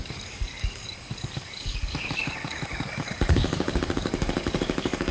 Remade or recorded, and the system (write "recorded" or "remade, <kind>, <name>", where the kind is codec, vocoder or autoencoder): remade, codec, DAC